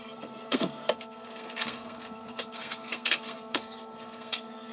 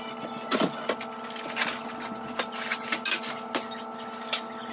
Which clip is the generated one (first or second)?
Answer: first